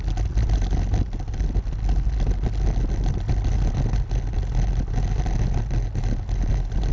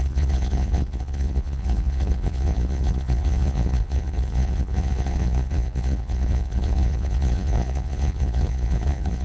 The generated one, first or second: second